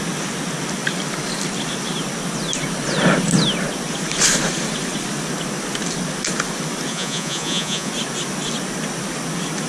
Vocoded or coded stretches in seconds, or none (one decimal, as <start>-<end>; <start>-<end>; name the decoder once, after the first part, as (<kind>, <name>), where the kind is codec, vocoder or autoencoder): 6.9-7.9 (vocoder, Vocos)

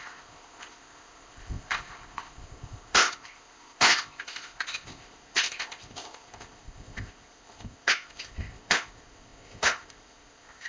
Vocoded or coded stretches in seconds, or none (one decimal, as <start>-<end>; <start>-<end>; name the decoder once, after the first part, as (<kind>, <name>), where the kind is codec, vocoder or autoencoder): 0.0-10.7 (codec, ZipCodec)

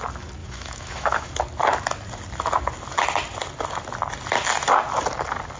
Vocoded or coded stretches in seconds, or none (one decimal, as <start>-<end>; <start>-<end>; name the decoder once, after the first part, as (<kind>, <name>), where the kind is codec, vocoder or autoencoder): 0.4-1.3 (autoencoder, DAC-VAE)

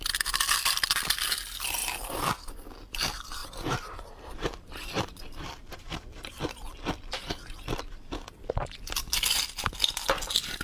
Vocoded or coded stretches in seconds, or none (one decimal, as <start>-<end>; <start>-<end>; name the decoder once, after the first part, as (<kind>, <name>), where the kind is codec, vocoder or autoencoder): 1.8-2.5 (vocoder, BigVGAN v2); 3.4-6.4

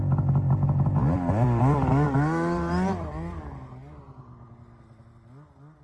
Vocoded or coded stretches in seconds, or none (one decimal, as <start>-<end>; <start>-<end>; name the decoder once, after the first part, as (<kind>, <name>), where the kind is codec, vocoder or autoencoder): none

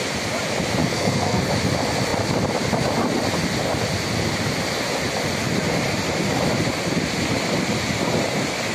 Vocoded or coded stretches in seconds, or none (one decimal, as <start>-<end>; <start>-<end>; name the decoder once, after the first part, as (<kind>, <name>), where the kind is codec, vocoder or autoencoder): 0.8-1.5 (codec, SNAC)

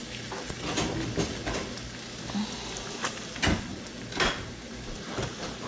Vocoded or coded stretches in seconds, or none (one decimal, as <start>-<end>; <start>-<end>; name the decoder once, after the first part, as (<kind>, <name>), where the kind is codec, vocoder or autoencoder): none

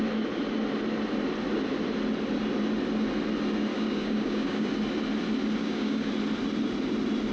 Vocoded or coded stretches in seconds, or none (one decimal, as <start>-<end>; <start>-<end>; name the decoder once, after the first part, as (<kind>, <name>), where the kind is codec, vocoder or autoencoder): 3.7-4.7 (codec, DAC); 5.6-6.1